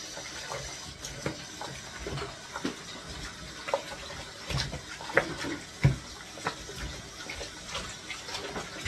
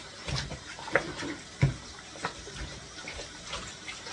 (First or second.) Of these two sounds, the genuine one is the first